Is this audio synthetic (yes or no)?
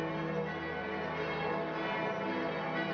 no